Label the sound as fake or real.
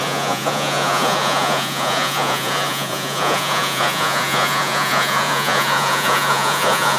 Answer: fake